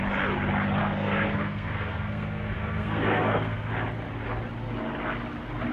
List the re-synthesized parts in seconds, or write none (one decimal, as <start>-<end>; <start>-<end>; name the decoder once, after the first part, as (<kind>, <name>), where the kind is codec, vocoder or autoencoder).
0.8-3.7 (codec, SNAC)